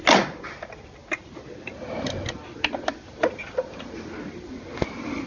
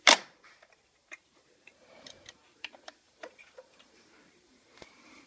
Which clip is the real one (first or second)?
first